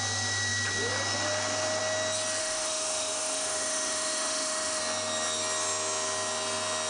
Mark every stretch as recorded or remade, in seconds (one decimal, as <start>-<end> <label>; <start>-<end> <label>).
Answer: 0.0-2.4 recorded; 2.4-4.8 remade; 4.8-6.9 recorded